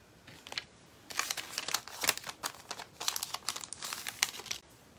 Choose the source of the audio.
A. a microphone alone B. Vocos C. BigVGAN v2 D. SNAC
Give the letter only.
A